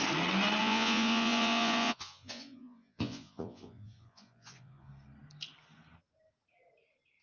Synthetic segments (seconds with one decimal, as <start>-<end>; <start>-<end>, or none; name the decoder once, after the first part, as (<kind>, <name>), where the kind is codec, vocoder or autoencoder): 0.6-4.9 (vocoder, Vocos)